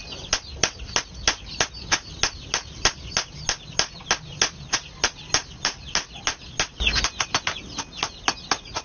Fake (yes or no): no